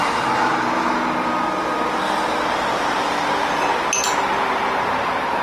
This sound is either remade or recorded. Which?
recorded